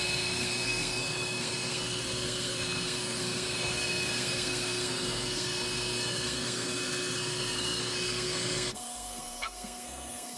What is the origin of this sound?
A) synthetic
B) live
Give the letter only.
A